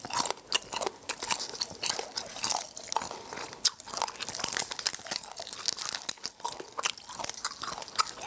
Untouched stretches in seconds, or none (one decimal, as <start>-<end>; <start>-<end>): 0.0-8.3